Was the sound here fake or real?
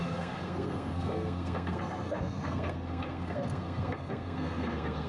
fake